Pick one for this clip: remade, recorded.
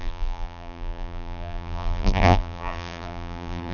remade